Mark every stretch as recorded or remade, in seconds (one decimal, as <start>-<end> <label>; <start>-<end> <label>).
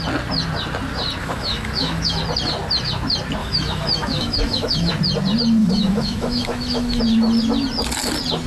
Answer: 0.0-1.2 recorded; 1.2-2.2 remade; 2.2-3.4 recorded; 3.4-4.9 remade; 4.9-5.6 recorded; 5.6-7.0 remade; 7.0-8.5 recorded